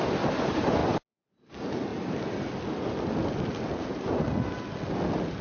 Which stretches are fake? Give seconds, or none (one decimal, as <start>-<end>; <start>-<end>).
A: none